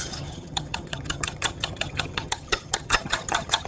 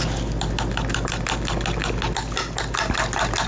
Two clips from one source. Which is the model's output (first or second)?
first